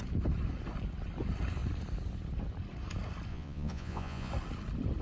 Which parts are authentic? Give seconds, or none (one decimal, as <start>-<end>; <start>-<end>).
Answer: 0.0-3.3; 4.3-5.0